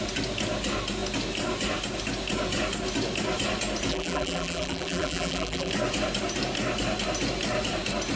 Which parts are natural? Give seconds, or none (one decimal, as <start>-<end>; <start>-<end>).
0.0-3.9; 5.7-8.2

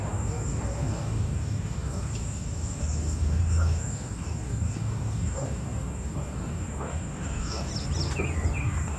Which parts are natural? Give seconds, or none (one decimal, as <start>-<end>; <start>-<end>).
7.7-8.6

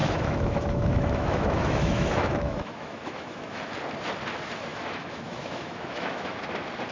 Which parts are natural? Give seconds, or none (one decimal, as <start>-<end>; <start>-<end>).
3.6-4.7; 6.4-6.9

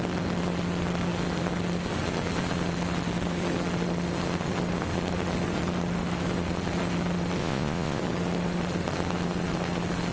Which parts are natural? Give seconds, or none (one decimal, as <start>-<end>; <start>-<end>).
0.0-7.4; 8.0-10.1

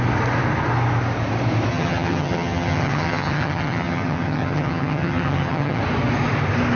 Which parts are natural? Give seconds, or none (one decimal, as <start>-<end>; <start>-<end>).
0.0-1.7; 5.8-6.8

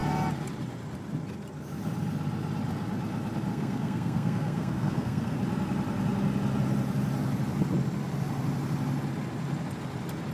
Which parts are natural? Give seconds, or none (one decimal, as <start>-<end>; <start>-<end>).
0.0-3.5; 5.4-10.3

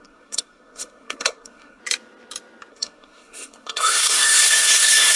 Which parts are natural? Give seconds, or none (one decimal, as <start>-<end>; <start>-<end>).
1.8-2.7

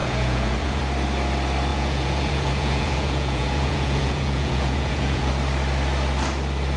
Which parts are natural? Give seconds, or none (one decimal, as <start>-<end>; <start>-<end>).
0.8-1.7; 5.3-6.8